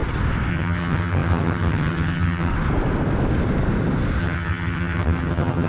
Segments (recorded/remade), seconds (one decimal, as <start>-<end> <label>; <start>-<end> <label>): 0.0-0.5 recorded; 0.5-2.5 remade; 2.5-4.2 recorded; 4.2-5.7 remade